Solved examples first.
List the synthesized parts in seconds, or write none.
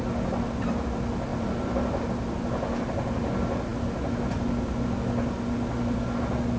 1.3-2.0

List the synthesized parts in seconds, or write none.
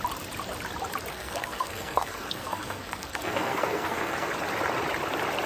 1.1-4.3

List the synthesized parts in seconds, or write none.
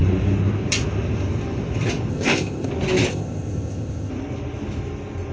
2.1-2.7; 3.1-4.1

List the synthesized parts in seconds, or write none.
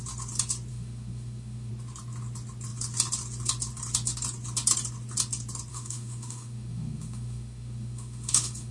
0.7-1.7; 5.7-8.7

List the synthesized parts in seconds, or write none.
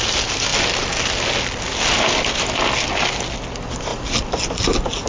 none